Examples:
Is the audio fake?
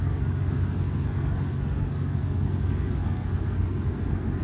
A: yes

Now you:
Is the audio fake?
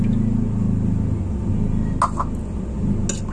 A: no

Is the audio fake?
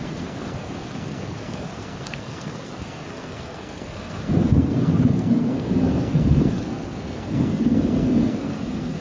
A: yes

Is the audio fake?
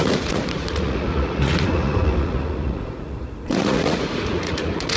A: yes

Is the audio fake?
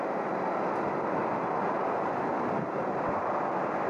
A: no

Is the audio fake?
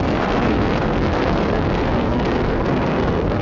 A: yes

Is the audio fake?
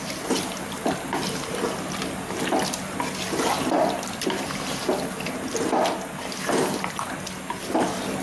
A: no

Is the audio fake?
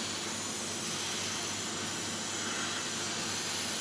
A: no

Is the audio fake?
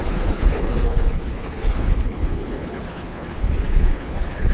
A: yes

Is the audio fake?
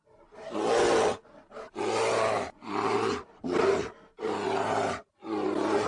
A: no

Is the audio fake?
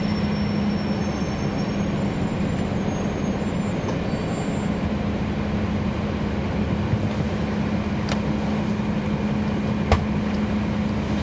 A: no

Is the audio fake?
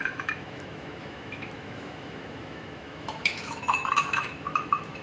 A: yes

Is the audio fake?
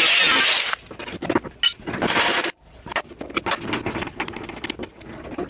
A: no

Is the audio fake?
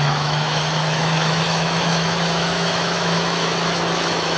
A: yes